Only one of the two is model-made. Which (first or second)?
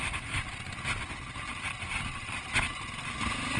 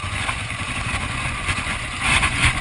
second